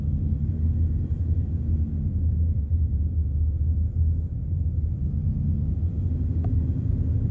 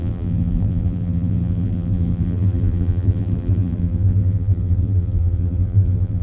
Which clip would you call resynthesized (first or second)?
second